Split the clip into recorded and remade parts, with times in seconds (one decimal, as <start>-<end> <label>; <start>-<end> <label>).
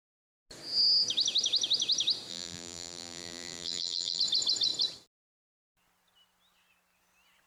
0.0-2.3 recorded; 2.3-4.2 remade; 4.2-7.5 recorded